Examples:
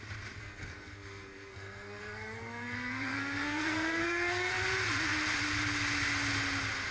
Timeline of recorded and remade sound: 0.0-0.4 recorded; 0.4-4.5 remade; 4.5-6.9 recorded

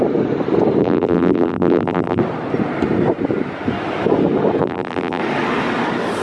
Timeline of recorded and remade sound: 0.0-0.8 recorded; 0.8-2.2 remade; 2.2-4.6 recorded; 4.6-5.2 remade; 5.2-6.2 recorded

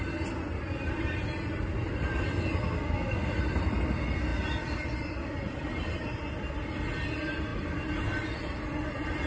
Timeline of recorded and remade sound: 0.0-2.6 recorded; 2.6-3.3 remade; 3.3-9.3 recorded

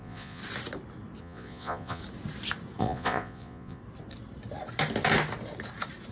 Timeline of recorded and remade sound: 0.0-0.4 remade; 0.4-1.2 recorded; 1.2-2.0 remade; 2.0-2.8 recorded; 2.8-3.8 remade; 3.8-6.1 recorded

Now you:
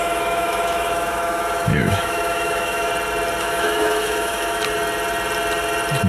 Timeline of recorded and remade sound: 0.0-2.9 remade; 2.9-3.4 recorded; 3.4-4.6 remade; 4.6-6.1 recorded